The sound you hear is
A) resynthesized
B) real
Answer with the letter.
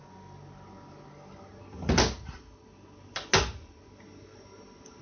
B